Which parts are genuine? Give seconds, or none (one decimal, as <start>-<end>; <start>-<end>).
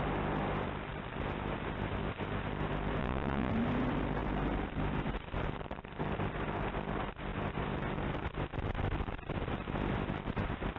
0.0-3.0; 3.5-10.8